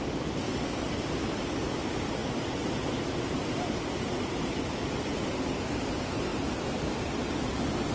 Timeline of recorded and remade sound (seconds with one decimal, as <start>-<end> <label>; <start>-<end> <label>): 0.0-7.9 recorded